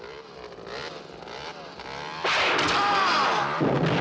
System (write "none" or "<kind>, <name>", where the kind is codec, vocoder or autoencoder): none